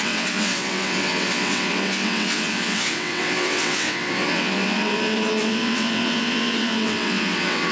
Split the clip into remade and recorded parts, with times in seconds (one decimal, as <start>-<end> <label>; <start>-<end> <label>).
0.0-7.7 remade